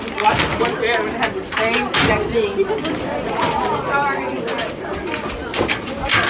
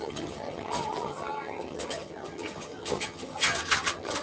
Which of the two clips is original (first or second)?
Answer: first